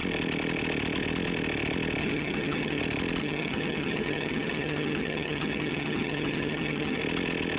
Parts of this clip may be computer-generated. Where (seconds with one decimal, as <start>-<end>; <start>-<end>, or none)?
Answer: 2.0-2.8; 3.2-7.0